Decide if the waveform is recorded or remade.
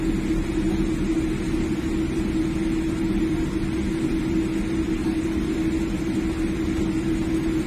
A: recorded